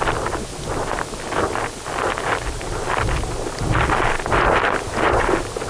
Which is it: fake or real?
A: real